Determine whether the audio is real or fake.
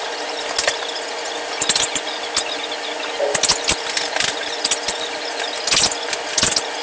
real